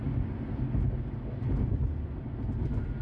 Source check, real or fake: real